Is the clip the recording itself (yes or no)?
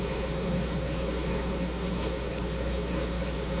no